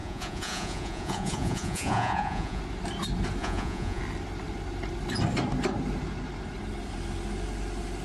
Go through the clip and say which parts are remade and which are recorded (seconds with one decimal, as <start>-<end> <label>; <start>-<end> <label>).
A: 0.0-2.6 remade; 2.6-3.4 recorded; 3.4-4.0 remade; 4.0-8.0 recorded